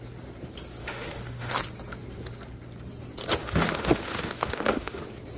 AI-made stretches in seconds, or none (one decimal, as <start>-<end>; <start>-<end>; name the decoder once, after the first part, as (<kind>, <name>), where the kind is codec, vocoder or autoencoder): 0.8-1.6 (autoencoder, DAC-VAE); 3.4-5.0